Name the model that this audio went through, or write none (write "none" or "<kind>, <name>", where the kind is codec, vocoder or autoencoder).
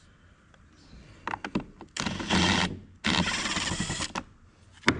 none